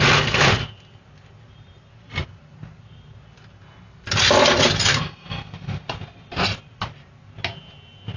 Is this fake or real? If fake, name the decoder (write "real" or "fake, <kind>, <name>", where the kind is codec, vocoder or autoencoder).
real